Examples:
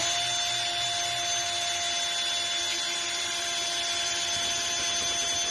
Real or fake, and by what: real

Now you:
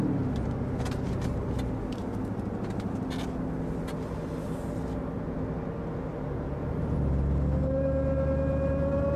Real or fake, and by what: real